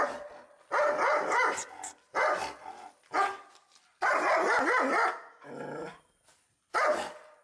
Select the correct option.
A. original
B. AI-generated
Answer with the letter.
A